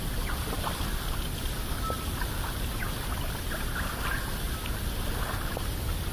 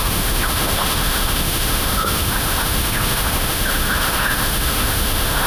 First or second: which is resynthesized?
second